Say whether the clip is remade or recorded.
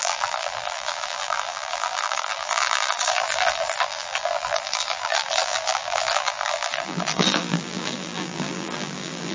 remade